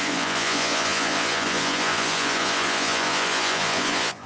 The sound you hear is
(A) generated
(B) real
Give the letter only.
A